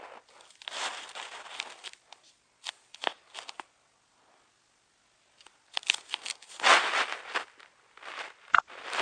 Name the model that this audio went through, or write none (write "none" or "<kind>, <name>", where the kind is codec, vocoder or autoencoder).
none